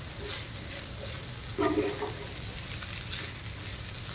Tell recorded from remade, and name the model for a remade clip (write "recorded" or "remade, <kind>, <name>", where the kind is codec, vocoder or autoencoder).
recorded